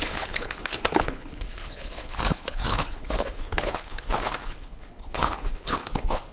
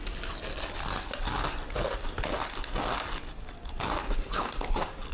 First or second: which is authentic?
second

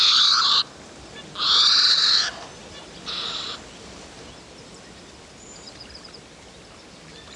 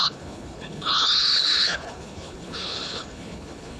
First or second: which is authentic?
first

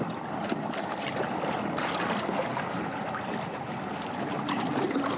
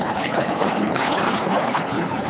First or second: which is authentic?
first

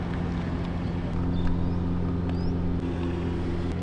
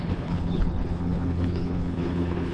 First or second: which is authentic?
first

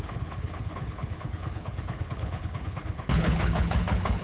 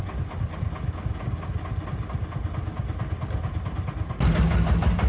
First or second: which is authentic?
second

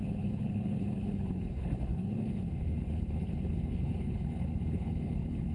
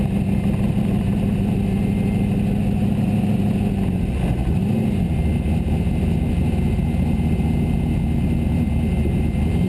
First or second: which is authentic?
second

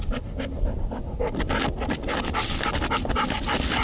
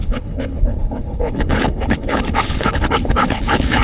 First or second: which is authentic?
first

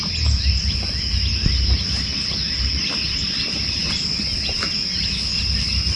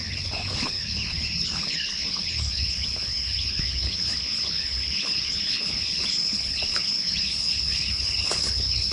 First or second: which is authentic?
first